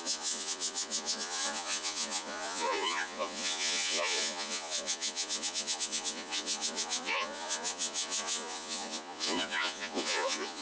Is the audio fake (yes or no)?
yes